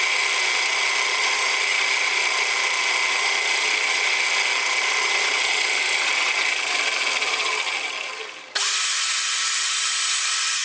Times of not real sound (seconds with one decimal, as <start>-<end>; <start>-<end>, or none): none